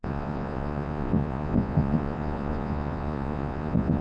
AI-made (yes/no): yes